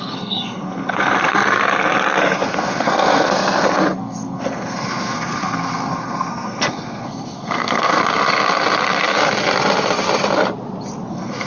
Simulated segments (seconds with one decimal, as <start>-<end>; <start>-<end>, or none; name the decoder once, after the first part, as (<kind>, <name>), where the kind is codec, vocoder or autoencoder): 0.0-1.6 (codec, SNAC); 2.2-8.0; 11.1-11.5

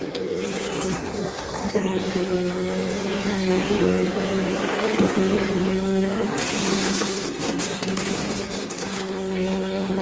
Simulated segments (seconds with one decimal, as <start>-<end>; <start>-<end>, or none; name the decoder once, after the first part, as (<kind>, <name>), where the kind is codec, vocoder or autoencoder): 0.0-10.0 (codec, SNAC)